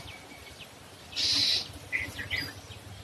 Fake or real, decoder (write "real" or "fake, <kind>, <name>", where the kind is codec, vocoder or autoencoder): real